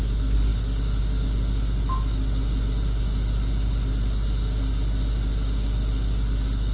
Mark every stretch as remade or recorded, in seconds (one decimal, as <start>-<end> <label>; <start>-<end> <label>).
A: 0.0-6.7 recorded